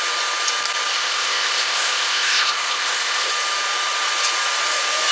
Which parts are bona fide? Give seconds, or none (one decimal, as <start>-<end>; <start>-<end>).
0.0-0.9; 3.3-5.1